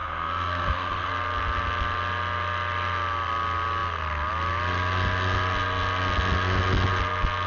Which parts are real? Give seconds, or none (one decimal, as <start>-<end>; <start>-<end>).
1.1-7.5